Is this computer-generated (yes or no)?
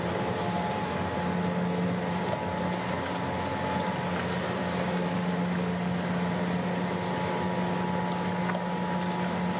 no